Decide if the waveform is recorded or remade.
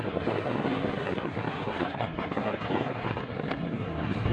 remade